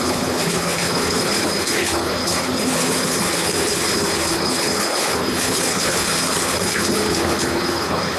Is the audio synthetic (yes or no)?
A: yes